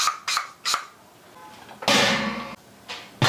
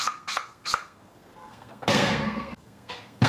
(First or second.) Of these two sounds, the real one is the first